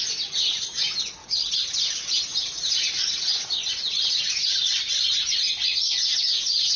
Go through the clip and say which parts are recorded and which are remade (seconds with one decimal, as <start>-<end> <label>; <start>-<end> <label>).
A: 0.0-6.8 recorded